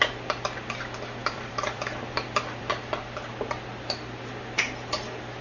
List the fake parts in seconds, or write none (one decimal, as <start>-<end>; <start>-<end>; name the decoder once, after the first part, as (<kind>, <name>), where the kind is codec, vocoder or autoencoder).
1.2-2.7 (vocoder, BigVGAN v2)